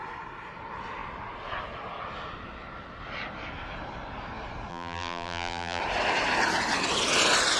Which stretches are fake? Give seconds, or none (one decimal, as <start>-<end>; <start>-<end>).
4.7-5.8